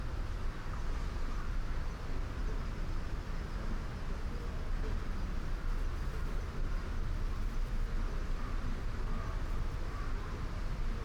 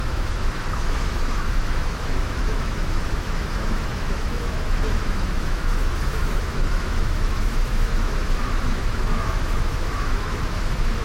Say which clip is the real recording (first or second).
first